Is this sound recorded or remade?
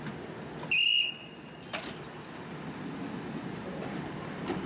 recorded